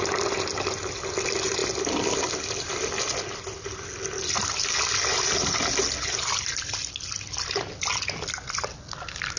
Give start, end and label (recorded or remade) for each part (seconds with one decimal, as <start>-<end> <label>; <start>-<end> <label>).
0.0-9.4 recorded